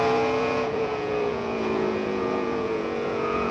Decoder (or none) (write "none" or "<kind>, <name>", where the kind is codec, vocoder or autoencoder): vocoder, Vocos